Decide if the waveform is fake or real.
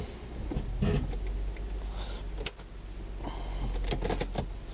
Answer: real